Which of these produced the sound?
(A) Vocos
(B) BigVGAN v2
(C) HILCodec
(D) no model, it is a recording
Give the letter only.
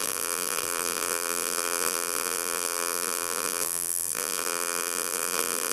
B